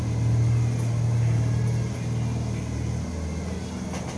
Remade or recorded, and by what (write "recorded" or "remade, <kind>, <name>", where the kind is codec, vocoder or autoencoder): recorded